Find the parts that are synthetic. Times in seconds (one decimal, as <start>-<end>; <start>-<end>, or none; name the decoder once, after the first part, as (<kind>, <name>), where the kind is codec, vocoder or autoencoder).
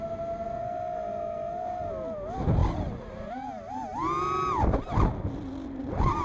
0.6-1.9 (codec, SNAC)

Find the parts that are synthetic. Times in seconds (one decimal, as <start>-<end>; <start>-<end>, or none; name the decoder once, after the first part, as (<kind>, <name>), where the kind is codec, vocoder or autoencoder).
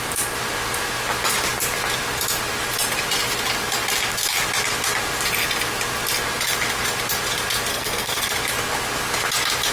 7.7-8.3 (codec, SNAC)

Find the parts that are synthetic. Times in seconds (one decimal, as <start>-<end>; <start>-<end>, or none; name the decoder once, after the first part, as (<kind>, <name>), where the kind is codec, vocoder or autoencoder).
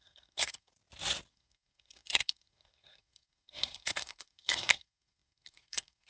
0.0-0.7 (codec, SNAC); 1.3-6.1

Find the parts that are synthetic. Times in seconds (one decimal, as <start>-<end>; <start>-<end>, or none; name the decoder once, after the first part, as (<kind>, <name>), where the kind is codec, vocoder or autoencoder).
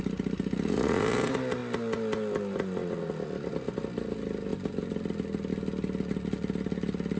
none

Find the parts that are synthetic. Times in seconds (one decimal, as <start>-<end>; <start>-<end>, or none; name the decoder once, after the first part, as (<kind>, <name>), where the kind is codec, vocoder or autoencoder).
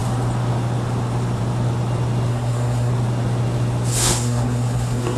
2.3-2.9 (codec, SNAC); 3.9-5.2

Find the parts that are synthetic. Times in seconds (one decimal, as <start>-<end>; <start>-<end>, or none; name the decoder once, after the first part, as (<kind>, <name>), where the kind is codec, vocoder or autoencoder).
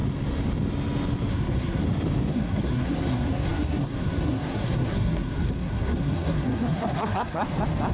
1.3-1.8 (codec, SNAC); 2.3-7.4